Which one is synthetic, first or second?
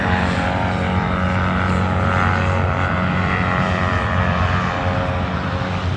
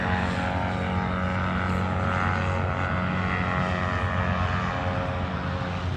first